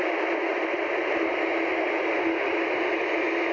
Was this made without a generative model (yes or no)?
yes